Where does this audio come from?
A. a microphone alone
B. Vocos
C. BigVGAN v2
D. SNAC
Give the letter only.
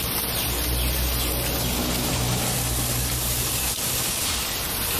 A